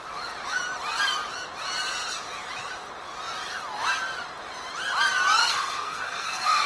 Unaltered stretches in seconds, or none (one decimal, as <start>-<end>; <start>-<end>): 0.0-5.4